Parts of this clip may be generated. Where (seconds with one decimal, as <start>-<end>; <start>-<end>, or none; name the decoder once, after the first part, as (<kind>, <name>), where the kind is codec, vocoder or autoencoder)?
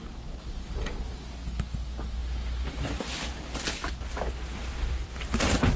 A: none